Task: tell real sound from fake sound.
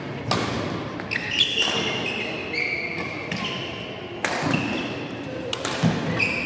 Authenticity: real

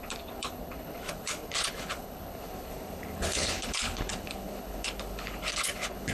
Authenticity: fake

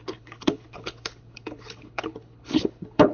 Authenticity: fake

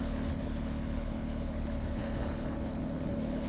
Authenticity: fake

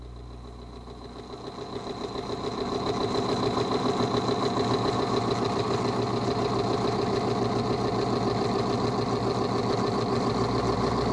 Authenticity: real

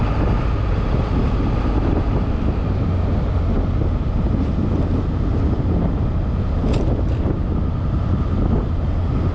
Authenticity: real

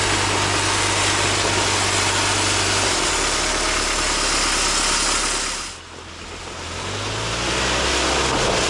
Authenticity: real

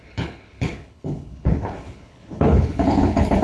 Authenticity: fake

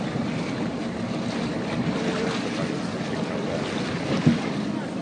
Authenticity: real